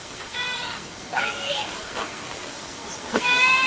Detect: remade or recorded remade